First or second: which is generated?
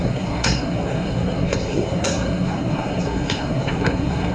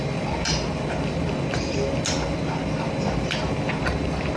first